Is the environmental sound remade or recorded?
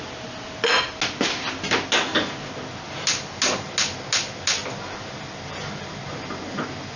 recorded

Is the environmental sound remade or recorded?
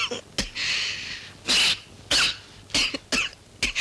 recorded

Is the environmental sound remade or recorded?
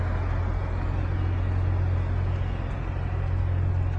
recorded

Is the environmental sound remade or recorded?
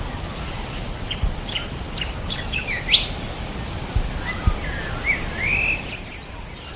recorded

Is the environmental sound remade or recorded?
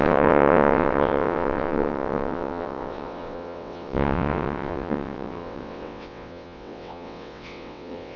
remade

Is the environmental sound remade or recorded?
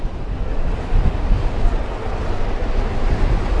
recorded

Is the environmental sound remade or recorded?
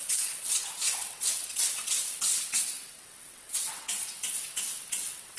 remade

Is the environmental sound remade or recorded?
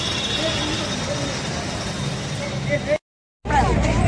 recorded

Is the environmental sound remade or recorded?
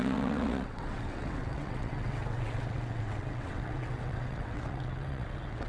remade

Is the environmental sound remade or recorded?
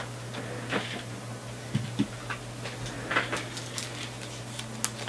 recorded